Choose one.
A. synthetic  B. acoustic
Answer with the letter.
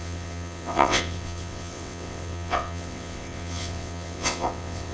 A